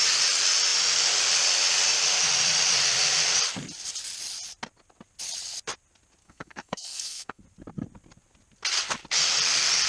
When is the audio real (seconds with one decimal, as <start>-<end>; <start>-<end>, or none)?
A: 0.0-6.2; 7.4-9.9